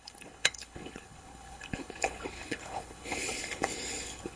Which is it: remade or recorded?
remade